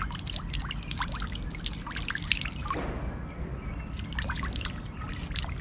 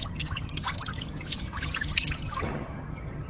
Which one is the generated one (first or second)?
second